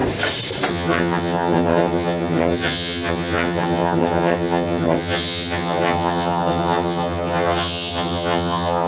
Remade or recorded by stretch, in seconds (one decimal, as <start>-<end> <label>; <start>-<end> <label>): 0.0-0.7 recorded; 0.7-8.9 remade